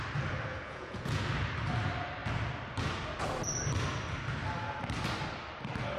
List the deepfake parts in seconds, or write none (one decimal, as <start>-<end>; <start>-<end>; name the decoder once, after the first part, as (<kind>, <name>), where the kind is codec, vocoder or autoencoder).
0.5-1.2 (vocoder, Vocos)